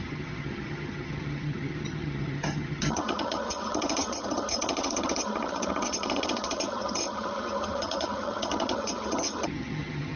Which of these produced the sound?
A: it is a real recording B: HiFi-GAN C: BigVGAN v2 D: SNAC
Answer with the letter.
B